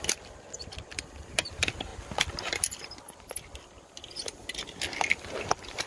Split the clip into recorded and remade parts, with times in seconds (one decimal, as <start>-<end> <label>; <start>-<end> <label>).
0.0-1.9 remade; 1.9-5.4 recorded; 5.4-5.9 remade